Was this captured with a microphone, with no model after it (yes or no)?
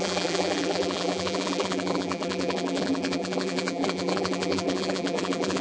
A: no